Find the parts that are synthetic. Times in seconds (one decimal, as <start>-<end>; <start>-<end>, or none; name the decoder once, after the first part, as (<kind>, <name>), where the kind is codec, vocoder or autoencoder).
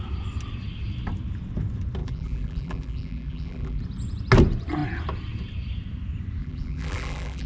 2.0-3.8 (vocoder, BigVGAN v2); 6.4-7.5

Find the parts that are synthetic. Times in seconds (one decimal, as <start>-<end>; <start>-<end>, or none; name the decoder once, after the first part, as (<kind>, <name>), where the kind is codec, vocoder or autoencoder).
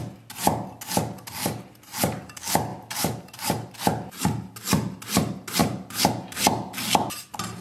5.6-6.4 (vocoder, BigVGAN v2)